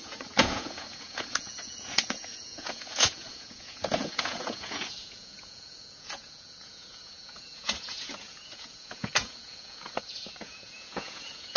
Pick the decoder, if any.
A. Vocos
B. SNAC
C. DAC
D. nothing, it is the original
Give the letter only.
A